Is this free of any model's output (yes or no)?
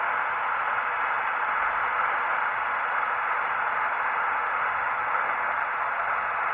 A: yes